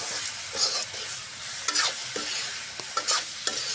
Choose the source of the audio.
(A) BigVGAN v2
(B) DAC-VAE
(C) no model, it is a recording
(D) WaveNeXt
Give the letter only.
C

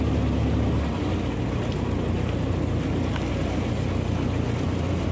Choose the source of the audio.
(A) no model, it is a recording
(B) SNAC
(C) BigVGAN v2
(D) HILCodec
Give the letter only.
A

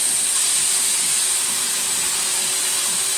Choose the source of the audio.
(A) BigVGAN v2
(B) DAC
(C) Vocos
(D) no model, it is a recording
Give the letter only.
A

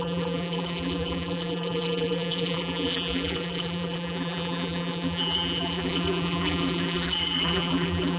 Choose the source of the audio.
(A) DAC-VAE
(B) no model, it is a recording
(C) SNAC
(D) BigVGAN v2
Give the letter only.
D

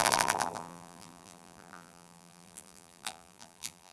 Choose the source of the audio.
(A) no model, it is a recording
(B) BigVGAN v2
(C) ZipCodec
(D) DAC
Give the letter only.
B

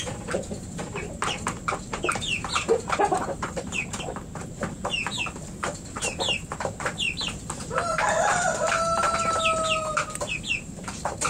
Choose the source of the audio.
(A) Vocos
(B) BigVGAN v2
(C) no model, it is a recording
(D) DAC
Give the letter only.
B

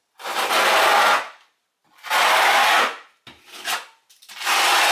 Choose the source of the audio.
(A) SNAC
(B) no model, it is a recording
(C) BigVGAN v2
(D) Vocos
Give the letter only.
B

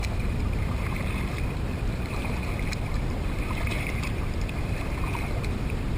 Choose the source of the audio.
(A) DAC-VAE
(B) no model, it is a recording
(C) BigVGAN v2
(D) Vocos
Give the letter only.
C